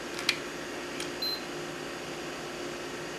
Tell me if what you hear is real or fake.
real